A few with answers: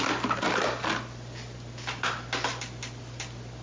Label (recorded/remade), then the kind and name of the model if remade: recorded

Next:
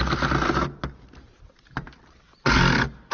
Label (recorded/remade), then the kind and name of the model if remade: recorded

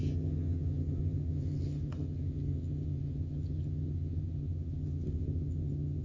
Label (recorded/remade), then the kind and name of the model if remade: remade, vocoder, HiFi-GAN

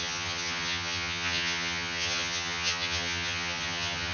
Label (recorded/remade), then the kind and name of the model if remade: remade, vocoder, HiFi-GAN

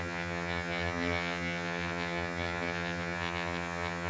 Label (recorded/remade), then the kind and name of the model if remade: remade, vocoder, HiFi-GAN